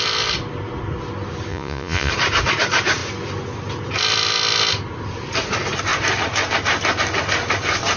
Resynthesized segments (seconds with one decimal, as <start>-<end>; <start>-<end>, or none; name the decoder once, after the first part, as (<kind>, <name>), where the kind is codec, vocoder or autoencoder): 1.5-2.1 (vocoder, Vocos)